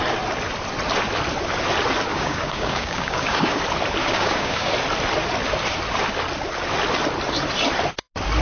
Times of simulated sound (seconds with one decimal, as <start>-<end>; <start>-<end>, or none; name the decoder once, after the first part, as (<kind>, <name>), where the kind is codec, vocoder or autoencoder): 2.1-3.6 (codec, DAC); 4.0-4.7